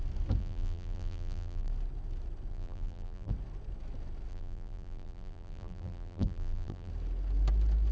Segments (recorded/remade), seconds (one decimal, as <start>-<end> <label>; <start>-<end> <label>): 0.0-0.4 recorded; 0.4-1.7 remade; 1.7-2.5 recorded; 2.5-3.3 remade; 3.3-4.3 recorded; 4.3-6.9 remade; 6.9-7.9 recorded